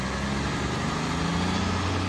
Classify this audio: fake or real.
real